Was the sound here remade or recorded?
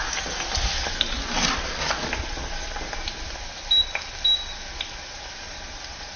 recorded